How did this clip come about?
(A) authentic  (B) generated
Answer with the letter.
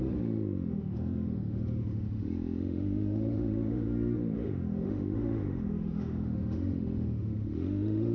B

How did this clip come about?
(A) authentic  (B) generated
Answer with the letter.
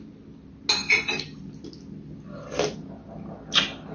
A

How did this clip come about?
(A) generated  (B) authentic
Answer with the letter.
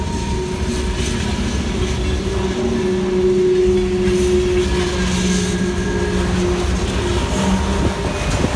B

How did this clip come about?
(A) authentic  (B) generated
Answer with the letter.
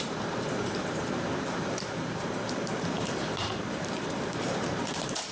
B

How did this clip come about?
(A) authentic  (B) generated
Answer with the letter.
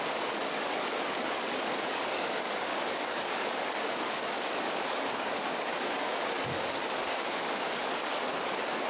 B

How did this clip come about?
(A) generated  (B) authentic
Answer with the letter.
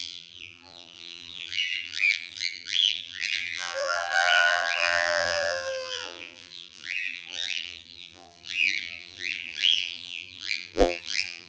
A